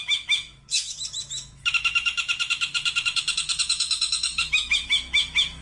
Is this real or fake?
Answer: fake